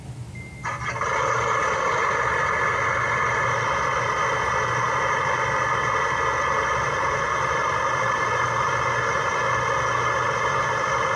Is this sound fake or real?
real